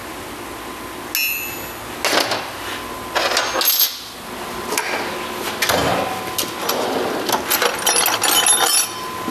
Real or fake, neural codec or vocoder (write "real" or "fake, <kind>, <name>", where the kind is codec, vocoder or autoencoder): real